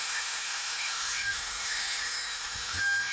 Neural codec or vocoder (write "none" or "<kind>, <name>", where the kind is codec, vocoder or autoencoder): autoencoder, DAC-VAE